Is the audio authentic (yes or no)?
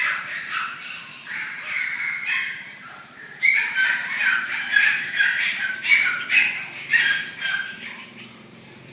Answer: no